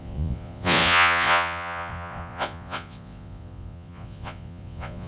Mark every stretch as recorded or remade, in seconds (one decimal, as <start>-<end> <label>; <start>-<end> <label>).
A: 0.0-5.1 remade